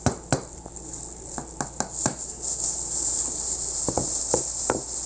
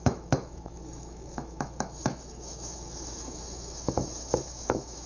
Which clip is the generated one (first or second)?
second